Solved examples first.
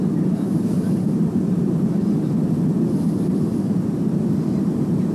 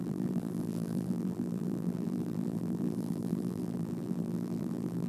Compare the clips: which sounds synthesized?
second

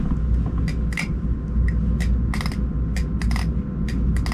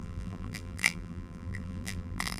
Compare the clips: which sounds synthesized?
second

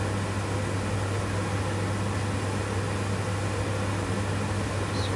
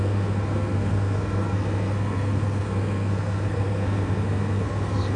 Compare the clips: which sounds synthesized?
second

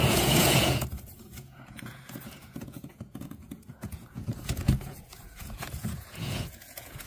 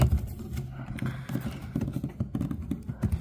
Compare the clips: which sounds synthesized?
first